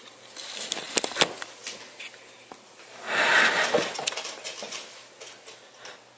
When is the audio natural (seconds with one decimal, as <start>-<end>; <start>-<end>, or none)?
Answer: 0.0-6.2